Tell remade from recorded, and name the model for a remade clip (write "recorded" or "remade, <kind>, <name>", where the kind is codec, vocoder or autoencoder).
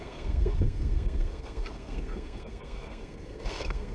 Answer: remade, codec, SNAC